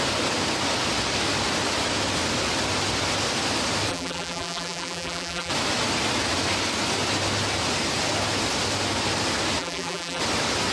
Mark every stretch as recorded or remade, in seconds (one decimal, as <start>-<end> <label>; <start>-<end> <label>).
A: 0.0-3.9 recorded; 3.9-5.5 remade; 5.5-9.6 recorded; 9.6-10.2 remade; 10.2-10.7 recorded

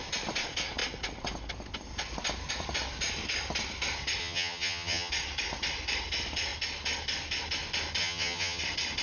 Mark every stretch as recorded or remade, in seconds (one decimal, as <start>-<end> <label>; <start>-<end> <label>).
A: 0.0-4.2 recorded; 4.2-5.1 remade; 5.1-8.0 recorded; 8.0-8.6 remade; 8.6-9.0 recorded

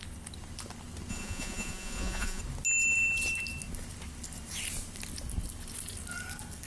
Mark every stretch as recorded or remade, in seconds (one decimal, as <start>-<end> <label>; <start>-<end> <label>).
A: 0.0-1.1 recorded; 1.1-2.4 remade; 2.4-6.7 recorded

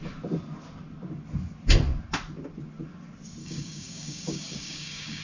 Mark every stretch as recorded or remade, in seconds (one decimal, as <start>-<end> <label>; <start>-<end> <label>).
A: 0.0-3.4 recorded; 3.4-5.2 remade

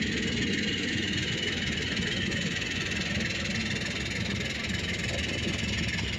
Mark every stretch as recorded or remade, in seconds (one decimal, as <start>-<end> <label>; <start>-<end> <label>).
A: 0.0-0.5 recorded; 0.5-3.1 remade; 3.1-6.2 recorded

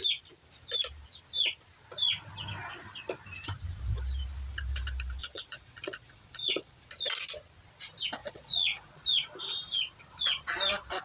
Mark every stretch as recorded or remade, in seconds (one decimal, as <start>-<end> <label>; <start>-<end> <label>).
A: 0.0-5.2 recorded; 5.2-6.9 remade; 6.9-8.2 recorded; 8.2-8.9 remade; 8.9-11.0 recorded

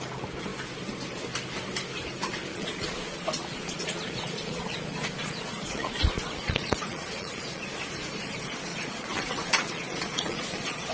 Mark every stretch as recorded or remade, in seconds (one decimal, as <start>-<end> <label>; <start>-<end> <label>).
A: 0.0-2.5 recorded; 2.5-7.6 remade; 7.6-8.7 recorded; 8.7-10.9 remade